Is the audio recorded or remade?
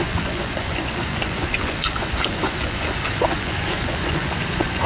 remade